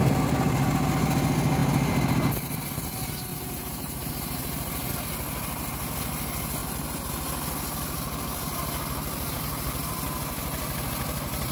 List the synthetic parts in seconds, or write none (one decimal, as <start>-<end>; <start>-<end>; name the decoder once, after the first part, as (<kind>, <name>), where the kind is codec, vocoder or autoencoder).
3.3-4.1 (vocoder, BigVGAN v2)